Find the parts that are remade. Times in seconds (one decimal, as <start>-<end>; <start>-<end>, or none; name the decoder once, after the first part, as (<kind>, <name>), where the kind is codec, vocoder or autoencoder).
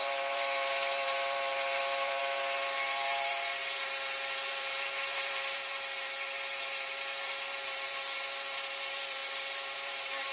0.0-10.3 (vocoder, BigVGAN v2)